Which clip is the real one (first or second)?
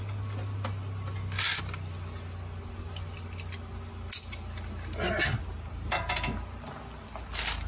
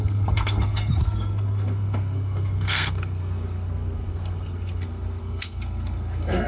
first